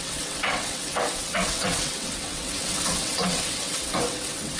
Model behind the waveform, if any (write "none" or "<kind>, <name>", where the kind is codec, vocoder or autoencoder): vocoder, WaveNeXt